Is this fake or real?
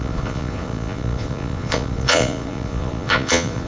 fake